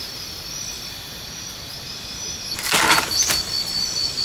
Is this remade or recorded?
recorded